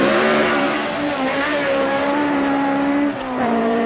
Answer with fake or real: fake